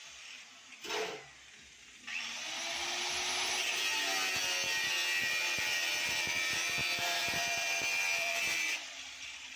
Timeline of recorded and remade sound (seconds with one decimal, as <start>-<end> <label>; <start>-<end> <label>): 0.0-5.2 recorded; 5.2-9.6 remade